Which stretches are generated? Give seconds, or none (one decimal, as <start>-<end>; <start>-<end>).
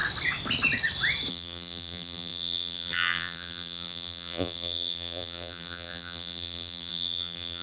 1.3-7.6